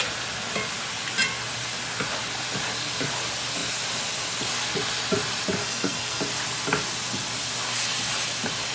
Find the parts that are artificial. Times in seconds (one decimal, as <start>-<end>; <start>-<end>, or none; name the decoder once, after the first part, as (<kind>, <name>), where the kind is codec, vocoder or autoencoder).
5.6-6.2 (codec, SNAC)